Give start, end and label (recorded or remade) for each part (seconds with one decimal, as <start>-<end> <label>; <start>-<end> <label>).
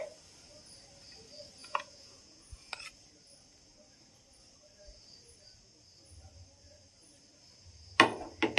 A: 0.0-1.6 recorded; 1.6-2.7 remade; 2.7-8.6 recorded